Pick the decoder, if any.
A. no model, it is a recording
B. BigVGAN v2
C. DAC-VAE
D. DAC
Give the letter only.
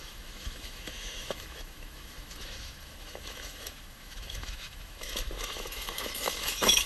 C